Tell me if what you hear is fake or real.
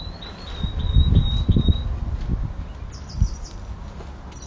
real